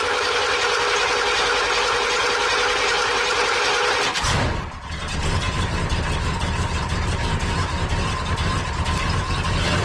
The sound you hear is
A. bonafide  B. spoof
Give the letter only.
A